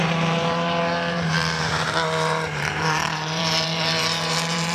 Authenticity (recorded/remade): remade